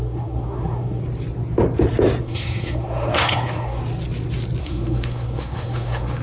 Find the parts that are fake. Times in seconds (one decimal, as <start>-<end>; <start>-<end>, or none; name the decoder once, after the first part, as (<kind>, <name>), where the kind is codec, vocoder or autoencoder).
0.0-1.0 (codec, SNAC); 2.2-3.8; 4.6-6.2